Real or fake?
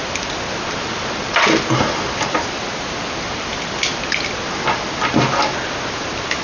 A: real